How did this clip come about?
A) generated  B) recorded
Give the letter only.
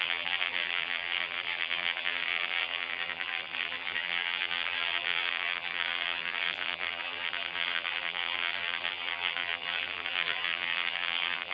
A